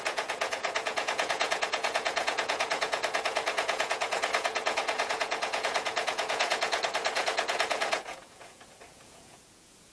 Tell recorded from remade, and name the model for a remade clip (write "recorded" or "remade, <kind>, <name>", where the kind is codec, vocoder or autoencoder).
remade, vocoder, Vocos